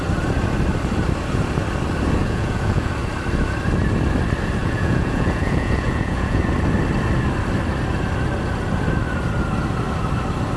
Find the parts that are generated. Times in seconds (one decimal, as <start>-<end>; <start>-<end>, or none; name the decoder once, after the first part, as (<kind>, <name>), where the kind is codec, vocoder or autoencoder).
2.2-2.9 (vocoder, Vocos); 4.6-6.4